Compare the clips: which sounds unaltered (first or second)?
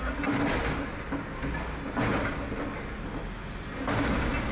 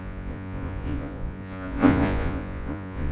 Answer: first